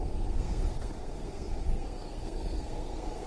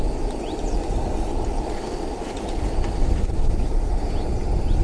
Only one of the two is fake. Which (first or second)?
first